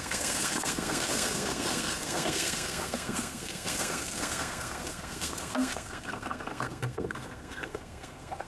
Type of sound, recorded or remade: remade